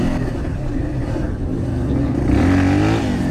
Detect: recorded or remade recorded